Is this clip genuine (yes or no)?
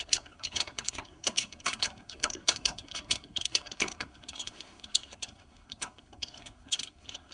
no